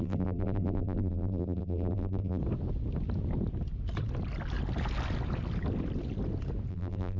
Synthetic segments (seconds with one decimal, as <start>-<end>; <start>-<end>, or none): 0.0-2.4; 6.7-7.2